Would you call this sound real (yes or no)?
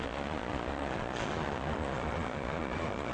no